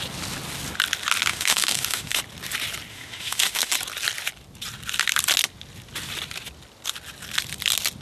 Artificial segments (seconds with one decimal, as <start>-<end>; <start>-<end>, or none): 1.3-2.2; 2.9-3.7